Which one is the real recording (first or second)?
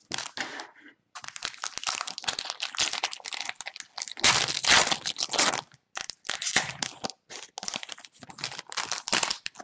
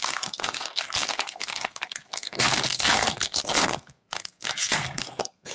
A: first